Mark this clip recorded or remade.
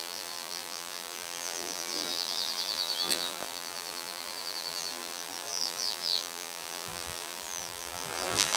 remade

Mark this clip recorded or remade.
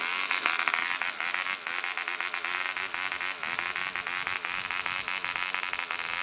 recorded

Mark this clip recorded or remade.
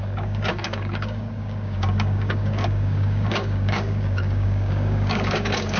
remade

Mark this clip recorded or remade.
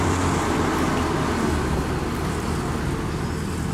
recorded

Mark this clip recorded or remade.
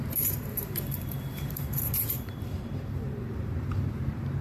remade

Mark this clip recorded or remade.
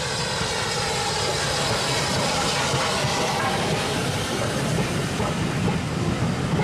recorded